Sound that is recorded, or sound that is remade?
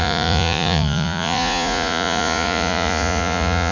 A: remade